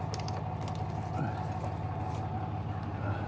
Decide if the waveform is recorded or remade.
recorded